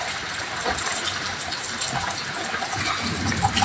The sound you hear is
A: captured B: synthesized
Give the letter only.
A